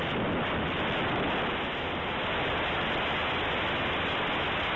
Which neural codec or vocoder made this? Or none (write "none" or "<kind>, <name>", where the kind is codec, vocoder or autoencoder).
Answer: none